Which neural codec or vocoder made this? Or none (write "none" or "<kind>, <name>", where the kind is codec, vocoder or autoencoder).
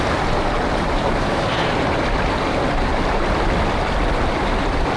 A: none